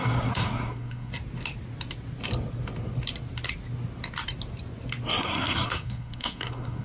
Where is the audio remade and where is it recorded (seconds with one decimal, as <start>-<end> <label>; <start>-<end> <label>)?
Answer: 0.0-1.1 remade; 1.1-5.2 recorded; 5.2-6.8 remade